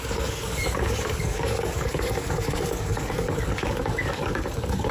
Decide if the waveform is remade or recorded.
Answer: remade